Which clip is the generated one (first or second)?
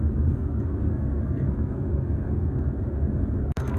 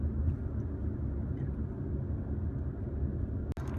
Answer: first